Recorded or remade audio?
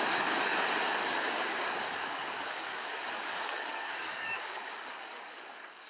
remade